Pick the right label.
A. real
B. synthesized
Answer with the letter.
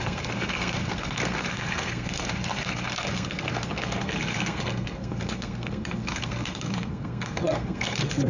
B